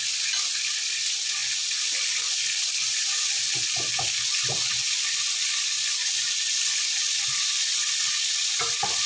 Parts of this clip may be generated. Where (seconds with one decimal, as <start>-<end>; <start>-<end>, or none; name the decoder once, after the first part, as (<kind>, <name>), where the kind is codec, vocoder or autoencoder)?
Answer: none